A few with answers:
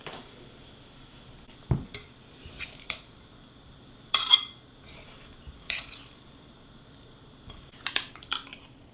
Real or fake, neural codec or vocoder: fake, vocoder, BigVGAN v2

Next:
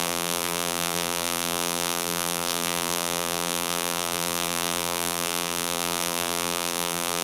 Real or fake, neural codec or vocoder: fake, vocoder, BigVGAN v2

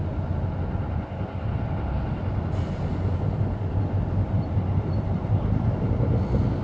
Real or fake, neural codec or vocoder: real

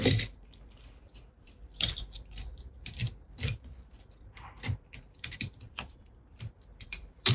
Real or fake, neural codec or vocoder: fake, vocoder, BigVGAN v2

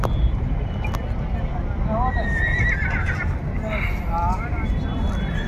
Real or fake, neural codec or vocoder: real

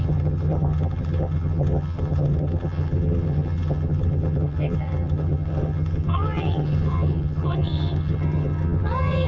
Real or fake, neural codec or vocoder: fake, vocoder, HiFi-GAN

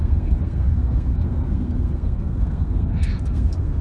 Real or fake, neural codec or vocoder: fake, codec, SNAC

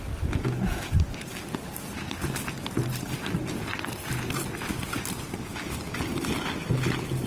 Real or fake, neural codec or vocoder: real